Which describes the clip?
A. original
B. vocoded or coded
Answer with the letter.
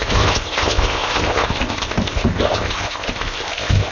B